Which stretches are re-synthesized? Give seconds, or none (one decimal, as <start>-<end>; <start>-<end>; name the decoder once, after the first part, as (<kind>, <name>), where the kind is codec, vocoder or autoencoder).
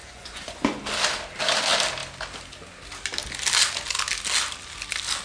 0.0-0.8 (vocoder, Vocos)